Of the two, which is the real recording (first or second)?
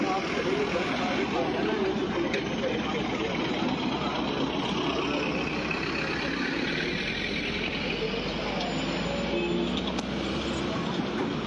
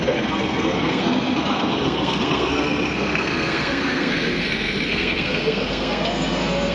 first